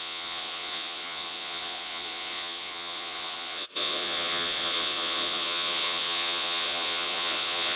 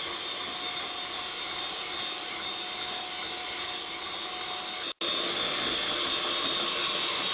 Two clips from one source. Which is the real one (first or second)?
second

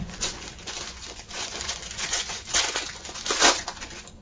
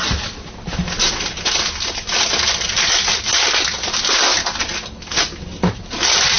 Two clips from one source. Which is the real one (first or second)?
second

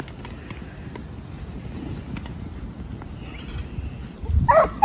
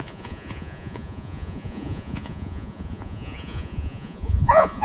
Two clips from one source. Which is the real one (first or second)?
first